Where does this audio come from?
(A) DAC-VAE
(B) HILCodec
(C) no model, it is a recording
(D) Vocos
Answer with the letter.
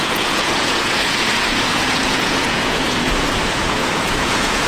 D